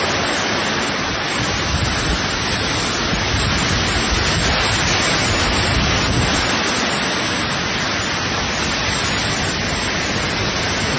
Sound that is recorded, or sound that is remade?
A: recorded